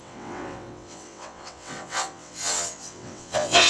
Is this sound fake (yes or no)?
yes